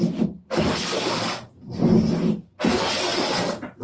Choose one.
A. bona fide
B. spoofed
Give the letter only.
B